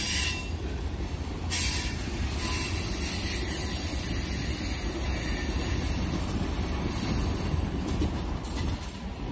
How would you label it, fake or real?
real